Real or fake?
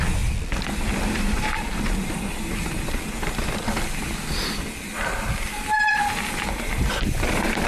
real